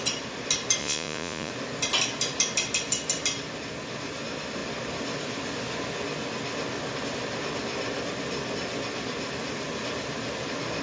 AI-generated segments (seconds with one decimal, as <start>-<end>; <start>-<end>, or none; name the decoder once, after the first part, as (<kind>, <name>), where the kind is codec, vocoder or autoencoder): 0.8-1.5 (vocoder, Vocos)